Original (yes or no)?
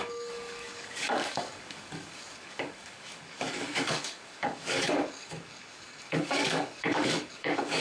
no